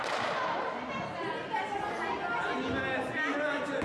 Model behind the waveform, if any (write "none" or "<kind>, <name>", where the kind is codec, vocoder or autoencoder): none